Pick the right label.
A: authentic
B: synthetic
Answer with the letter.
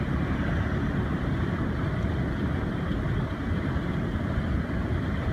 A